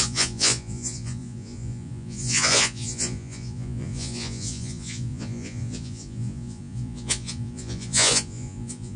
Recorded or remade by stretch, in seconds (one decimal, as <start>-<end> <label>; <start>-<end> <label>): 0.0-9.0 remade